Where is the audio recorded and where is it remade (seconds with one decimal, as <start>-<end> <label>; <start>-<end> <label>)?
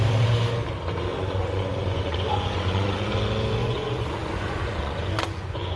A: 0.0-1.1 recorded; 1.1-3.1 remade; 3.1-3.6 recorded; 3.6-5.8 remade